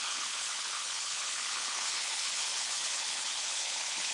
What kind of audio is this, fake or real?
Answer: fake